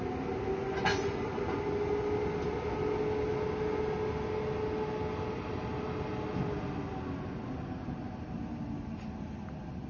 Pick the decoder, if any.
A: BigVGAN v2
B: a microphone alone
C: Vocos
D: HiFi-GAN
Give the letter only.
B